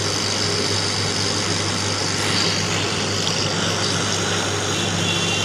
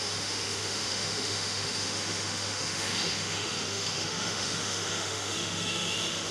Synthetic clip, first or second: second